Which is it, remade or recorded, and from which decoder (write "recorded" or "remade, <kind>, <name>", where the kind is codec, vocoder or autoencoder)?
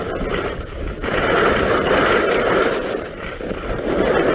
recorded